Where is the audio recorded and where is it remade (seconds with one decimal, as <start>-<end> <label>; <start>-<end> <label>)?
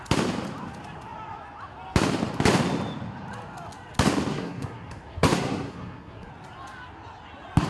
0.0-4.3 recorded; 4.3-6.3 remade; 6.3-7.7 recorded